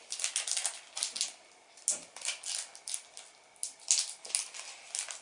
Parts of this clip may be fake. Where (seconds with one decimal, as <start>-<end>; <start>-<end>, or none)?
none

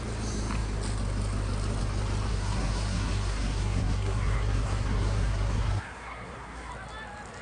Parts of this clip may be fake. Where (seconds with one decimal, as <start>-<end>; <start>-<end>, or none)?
2.3-6.7

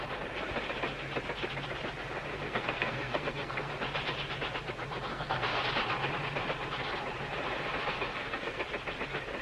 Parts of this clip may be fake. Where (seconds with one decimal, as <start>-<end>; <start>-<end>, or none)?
2.3-3.7; 5.1-5.6; 7.9-8.6

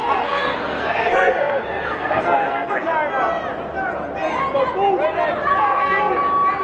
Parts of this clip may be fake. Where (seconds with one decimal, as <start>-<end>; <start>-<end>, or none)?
0.0-2.9; 5.5-6.1

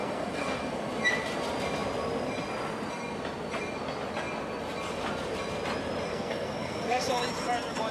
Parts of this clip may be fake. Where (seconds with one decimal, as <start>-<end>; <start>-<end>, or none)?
0.0-0.9; 6.1-7.2

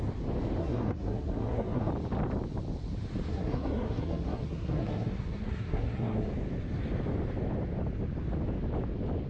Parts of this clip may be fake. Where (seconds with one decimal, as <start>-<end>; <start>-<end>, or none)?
0.6-1.9; 3.3-6.3